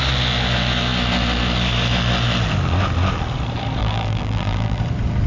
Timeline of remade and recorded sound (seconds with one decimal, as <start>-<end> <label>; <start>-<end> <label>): 0.0-3.8 recorded; 3.8-4.8 remade; 4.8-5.3 recorded